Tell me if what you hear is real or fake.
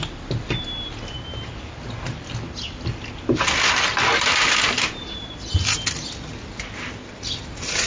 real